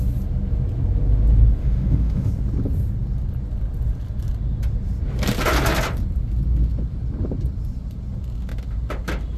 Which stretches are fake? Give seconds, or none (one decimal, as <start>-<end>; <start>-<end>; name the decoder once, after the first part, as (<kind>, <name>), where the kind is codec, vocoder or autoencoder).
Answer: 1.6-2.3 (autoencoder, DAC-VAE)